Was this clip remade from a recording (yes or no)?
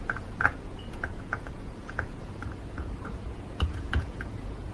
yes